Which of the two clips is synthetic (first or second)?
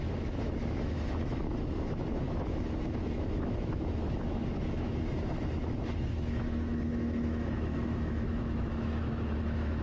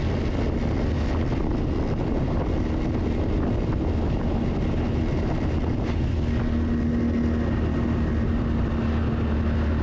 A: first